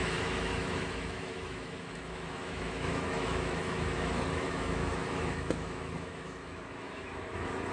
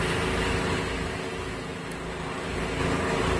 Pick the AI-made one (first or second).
first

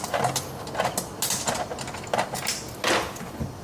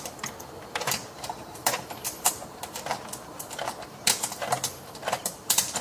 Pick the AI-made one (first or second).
second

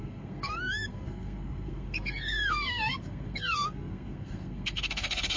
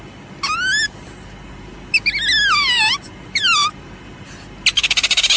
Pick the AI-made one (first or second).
first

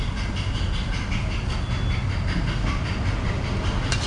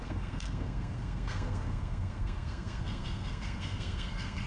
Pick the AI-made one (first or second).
second